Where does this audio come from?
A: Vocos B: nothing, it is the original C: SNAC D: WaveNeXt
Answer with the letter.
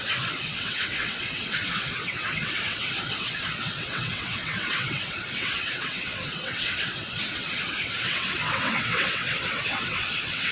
D